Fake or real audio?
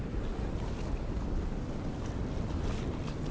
real